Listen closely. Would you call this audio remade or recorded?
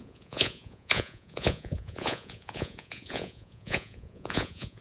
remade